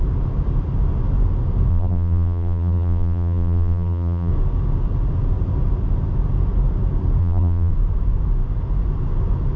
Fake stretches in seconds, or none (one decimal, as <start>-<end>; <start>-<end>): 1.7-4.3; 7.2-7.7